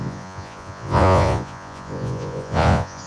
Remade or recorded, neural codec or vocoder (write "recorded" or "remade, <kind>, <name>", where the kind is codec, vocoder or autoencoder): remade, vocoder, Vocos